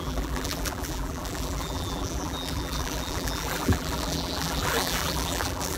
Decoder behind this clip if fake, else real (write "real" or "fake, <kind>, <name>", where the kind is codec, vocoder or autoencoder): fake, vocoder, BigVGAN v2